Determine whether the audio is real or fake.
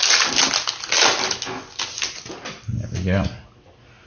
real